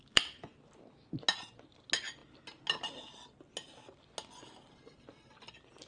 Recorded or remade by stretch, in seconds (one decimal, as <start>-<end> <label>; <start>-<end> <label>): 0.0-5.9 recorded

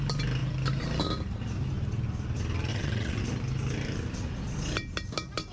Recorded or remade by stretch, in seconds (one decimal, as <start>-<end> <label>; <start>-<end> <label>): 0.0-2.7 recorded; 2.7-3.2 remade; 3.2-5.5 recorded

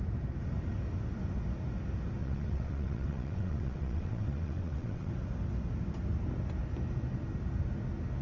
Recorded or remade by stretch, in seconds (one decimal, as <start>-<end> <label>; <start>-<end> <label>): 0.0-2.2 recorded; 2.2-5.1 remade; 5.1-8.2 recorded